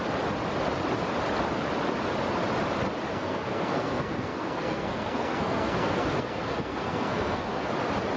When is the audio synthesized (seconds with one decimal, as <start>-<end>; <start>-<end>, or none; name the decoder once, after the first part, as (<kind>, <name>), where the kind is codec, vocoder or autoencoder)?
3.1-7.7 (codec, SNAC)